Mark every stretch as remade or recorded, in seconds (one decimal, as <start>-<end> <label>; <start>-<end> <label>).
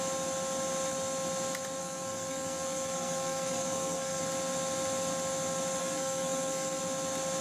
0.0-1.8 recorded; 1.8-4.2 remade; 4.2-5.8 recorded; 5.8-6.8 remade; 6.8-7.4 recorded